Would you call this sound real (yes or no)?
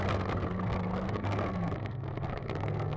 no